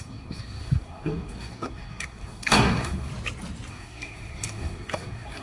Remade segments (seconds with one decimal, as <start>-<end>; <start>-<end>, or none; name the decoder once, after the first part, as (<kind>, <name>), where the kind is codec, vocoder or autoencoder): 0.0-3.1 (codec, SNAC); 3.7-5.4